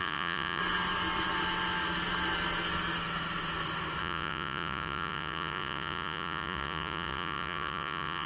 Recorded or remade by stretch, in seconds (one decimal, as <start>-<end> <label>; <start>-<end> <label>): 0.0-0.6 remade; 0.6-4.0 recorded; 4.0-8.3 remade